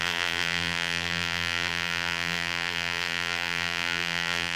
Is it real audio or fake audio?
fake